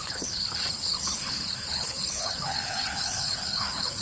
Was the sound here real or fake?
fake